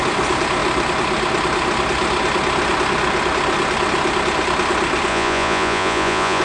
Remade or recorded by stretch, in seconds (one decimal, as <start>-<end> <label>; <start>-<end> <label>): 0.0-5.1 recorded; 5.1-6.4 remade